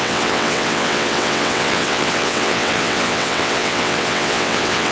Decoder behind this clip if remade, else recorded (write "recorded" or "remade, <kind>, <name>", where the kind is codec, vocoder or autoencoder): remade, vocoder, WaveNeXt